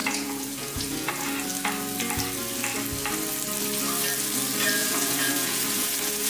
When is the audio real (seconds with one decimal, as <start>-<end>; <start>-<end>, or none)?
1.1-4.8